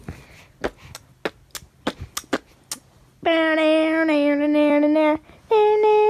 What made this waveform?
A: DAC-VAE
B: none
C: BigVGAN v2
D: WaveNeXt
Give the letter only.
B